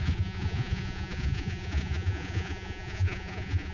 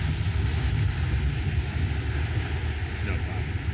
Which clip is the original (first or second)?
second